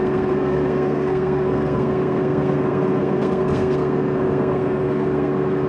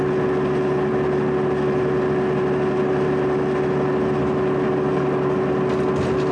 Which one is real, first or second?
second